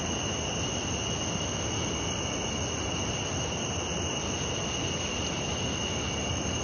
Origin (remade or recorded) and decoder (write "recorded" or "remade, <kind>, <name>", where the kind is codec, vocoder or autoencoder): recorded